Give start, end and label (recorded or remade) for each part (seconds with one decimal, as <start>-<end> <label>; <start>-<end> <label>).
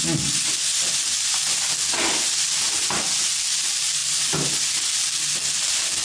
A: 0.0-6.0 recorded